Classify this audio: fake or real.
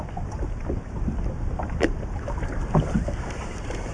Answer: real